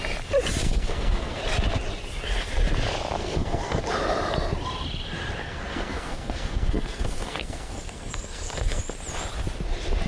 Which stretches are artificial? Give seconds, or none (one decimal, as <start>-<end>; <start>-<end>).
0.6-1.4; 3.2-3.8; 5.4-8.8

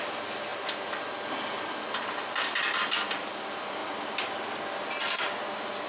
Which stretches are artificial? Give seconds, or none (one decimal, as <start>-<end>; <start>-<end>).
none

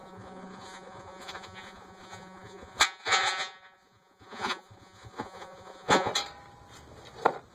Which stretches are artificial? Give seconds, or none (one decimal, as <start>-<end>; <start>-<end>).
0.0-6.1

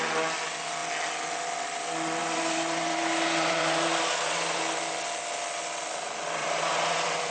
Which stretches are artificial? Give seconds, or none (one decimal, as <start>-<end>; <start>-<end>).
2.2-4.6; 6.4-7.3

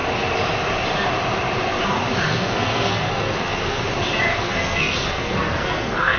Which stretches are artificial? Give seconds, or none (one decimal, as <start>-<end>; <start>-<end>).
2.3-3.8; 4.3-6.2